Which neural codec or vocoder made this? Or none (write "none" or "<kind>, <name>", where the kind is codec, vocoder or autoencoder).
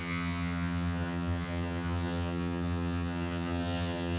vocoder, HiFi-GAN